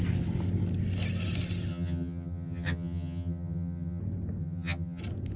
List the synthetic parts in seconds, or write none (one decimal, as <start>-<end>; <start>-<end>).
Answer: 1.7-4.0; 4.4-5.0